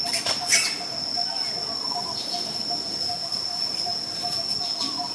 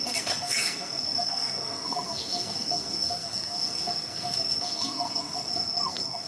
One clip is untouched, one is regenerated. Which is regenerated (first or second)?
second